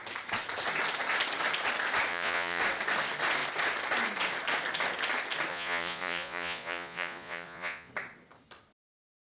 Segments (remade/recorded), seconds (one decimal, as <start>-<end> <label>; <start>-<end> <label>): 0.0-2.1 recorded; 2.1-2.6 remade; 2.6-5.5 recorded; 5.5-7.9 remade; 7.9-9.3 recorded